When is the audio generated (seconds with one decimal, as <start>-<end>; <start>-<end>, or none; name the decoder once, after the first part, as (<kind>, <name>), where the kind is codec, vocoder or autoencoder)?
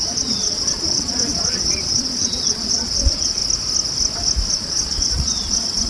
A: 0.0-3.4 (vocoder, Vocos); 4.5-5.9